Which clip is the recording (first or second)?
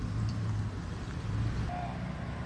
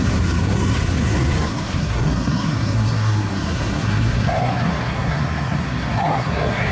first